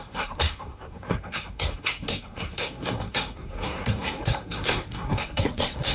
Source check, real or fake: fake